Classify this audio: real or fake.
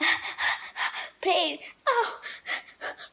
real